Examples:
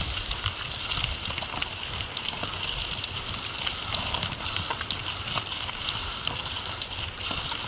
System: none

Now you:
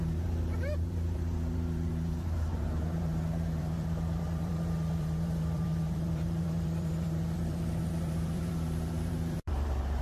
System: vocoder, BigVGAN v2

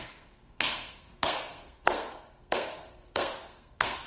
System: codec, SNAC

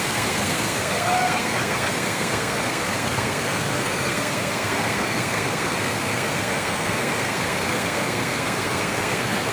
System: codec, SNAC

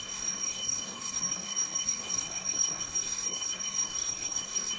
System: codec, SNAC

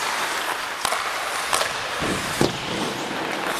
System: none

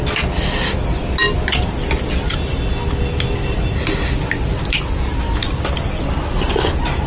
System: none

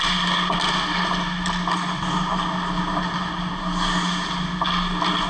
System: none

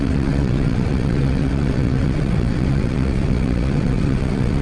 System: vocoder, WaveNeXt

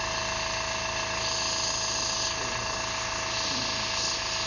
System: none